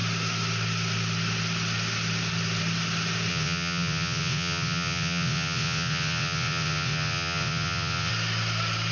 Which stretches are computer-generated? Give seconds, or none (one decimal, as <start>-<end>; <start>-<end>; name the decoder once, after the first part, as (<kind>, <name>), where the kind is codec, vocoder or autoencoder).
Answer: 3.3-8.1 (vocoder, WaveNeXt)